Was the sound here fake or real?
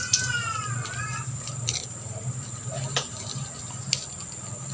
real